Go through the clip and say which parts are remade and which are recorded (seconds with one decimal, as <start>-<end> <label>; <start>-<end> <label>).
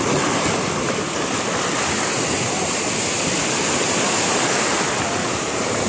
0.0-2.1 recorded; 2.1-2.9 remade; 2.9-5.2 recorded; 5.2-5.9 remade